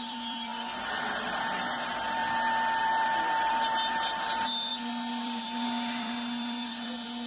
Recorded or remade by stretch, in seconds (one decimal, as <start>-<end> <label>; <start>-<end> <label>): 0.0-2.2 remade; 2.2-2.8 recorded; 2.8-7.3 remade